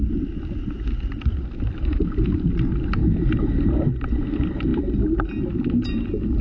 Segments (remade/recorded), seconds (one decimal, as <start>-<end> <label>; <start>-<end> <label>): 0.0-1.3 recorded; 1.3-2.5 remade; 2.5-3.0 recorded; 3.0-4.3 remade; 4.3-6.4 recorded